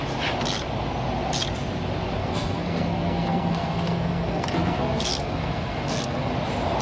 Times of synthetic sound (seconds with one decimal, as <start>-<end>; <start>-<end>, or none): 2.2-6.3